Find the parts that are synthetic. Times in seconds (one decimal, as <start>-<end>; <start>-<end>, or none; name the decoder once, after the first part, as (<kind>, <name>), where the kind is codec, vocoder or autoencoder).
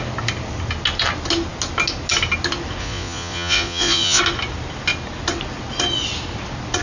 2.8-4.2 (vocoder, Vocos)